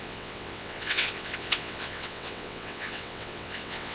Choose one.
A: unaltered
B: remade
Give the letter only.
B